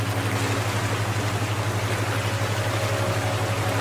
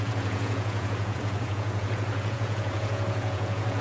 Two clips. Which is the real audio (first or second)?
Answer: first